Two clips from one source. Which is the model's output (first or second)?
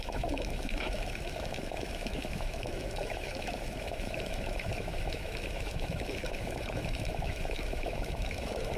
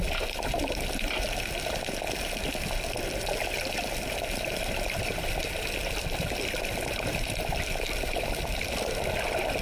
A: first